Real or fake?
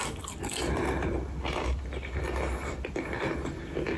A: real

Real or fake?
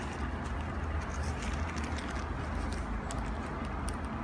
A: real